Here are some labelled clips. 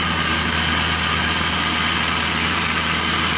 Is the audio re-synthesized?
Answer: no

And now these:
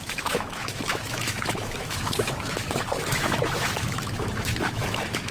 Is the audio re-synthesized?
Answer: yes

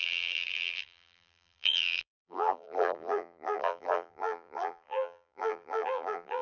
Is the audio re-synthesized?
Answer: yes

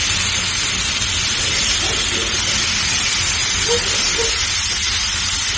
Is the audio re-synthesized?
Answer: no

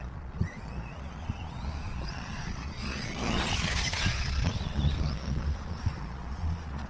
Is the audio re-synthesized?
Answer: yes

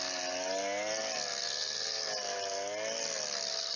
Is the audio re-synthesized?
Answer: no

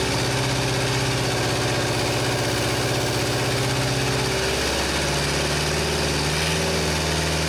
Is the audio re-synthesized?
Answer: no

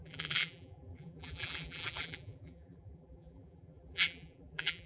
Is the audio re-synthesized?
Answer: yes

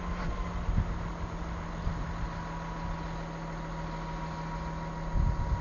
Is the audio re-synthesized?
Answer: no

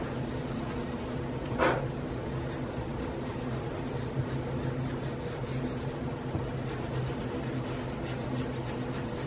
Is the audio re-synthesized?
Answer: no